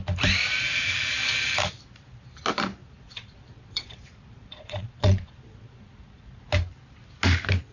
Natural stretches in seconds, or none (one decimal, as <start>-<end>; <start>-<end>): 0.0-2.8; 6.4-7.7